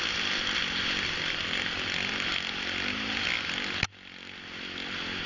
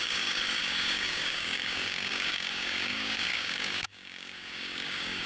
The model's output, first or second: second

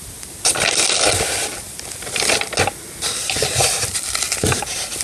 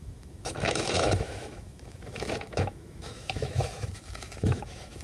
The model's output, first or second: second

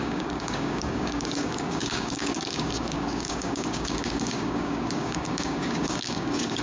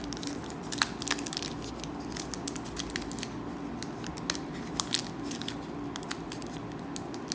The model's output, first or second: first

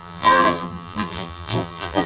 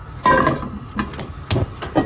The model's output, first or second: first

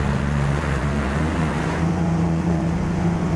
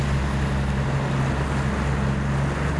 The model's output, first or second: first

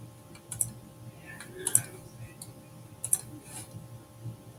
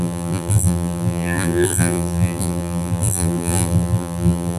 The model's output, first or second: second